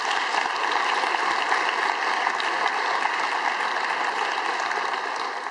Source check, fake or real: real